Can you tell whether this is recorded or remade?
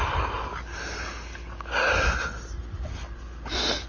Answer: recorded